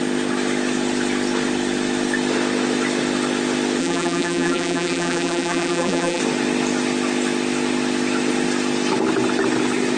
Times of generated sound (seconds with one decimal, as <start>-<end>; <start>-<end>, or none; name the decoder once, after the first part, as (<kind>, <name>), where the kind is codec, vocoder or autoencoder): 3.8-6.2 (vocoder, BigVGAN v2)